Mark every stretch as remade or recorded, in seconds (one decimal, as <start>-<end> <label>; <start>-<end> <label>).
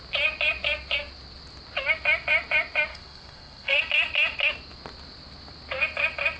0.0-2.9 recorded; 2.9-3.8 remade; 3.8-6.4 recorded